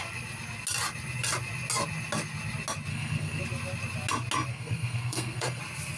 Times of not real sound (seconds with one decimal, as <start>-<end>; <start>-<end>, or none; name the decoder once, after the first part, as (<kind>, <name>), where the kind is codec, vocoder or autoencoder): 2.9-3.4 (codec, SNAC); 4.5-5.6